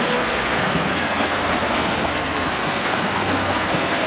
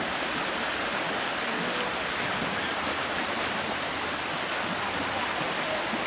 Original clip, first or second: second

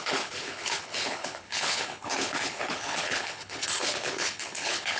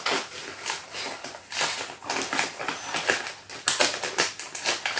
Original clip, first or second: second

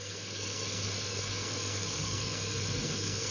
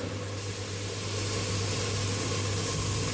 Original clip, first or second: second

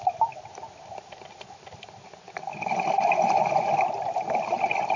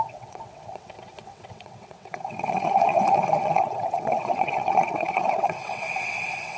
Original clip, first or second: first